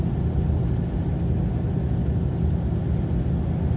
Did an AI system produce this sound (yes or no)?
no